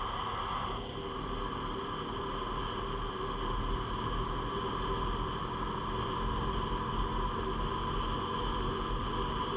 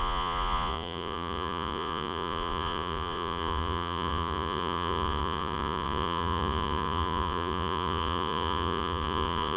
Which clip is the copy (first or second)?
second